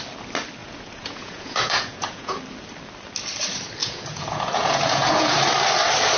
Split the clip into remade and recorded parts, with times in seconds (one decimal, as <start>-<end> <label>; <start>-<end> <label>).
0.0-0.6 recorded; 0.6-2.4 remade; 2.4-3.8 recorded; 3.8-5.4 remade; 5.4-6.2 recorded